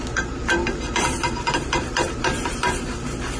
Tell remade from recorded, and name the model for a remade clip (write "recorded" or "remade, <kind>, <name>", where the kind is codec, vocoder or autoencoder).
recorded